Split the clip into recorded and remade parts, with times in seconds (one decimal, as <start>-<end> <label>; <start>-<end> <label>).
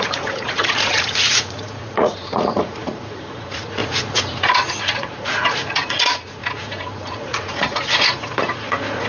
0.0-9.1 remade